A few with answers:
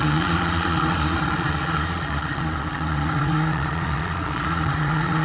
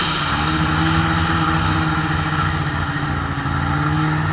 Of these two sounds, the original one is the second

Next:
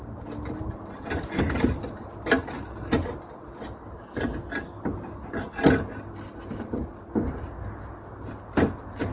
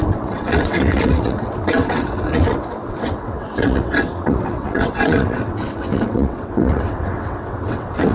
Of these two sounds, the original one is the first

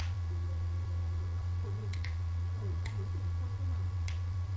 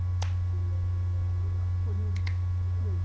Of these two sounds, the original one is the second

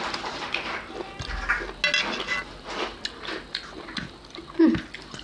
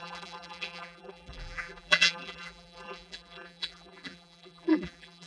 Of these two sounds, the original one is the first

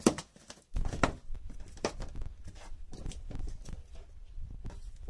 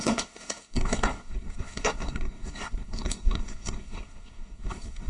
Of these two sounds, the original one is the first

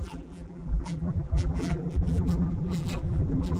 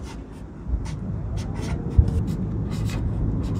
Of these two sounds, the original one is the second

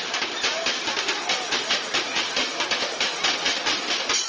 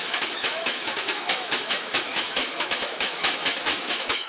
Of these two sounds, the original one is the first